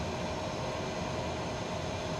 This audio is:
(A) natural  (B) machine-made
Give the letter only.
A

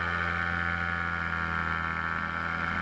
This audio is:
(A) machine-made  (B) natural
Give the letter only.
B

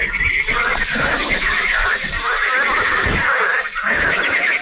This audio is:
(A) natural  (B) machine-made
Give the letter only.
B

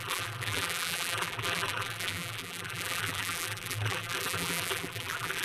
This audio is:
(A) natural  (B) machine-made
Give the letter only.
B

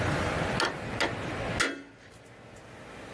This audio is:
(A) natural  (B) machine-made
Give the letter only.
A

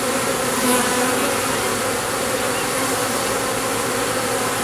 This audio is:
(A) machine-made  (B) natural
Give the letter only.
B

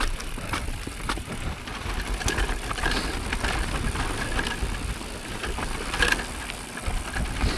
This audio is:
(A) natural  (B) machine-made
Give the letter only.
A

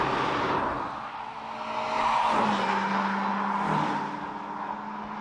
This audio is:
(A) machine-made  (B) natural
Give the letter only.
B